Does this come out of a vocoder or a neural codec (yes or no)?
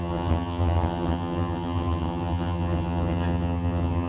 yes